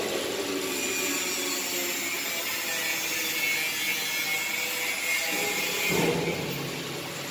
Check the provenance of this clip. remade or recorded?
recorded